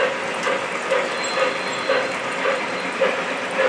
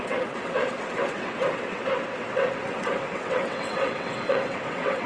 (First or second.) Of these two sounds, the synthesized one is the second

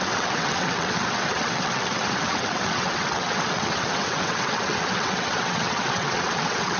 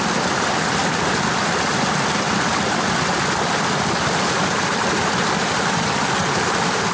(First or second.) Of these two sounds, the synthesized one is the first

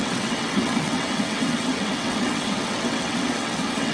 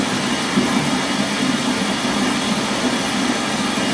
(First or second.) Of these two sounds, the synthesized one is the first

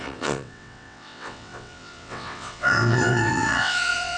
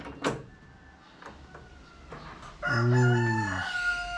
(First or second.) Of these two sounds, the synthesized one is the first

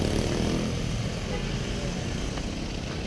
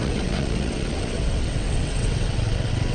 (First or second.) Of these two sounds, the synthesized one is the second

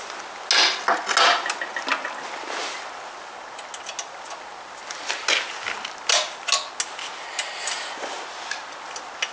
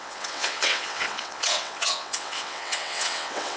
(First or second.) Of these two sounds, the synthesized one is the second